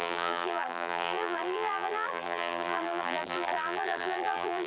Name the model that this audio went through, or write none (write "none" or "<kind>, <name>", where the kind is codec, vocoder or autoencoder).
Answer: vocoder, BigVGAN v2